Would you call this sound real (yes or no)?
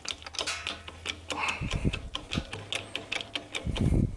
yes